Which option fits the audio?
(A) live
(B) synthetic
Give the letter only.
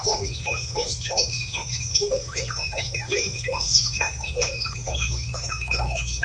B